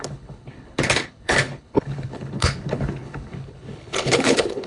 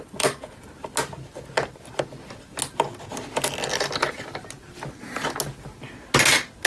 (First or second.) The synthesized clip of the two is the first